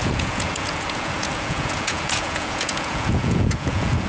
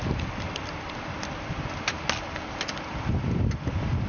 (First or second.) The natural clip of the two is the second